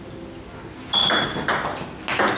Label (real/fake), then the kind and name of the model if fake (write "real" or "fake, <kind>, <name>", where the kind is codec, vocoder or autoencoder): real